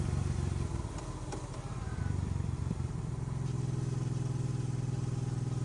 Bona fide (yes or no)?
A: yes